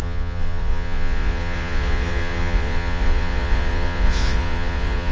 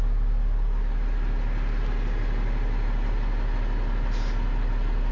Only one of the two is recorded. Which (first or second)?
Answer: second